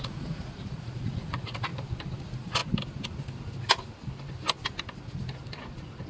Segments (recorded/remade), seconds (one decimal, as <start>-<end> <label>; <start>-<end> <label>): 0.0-1.7 remade; 1.7-2.2 recorded; 2.2-2.6 remade; 2.6-6.1 recorded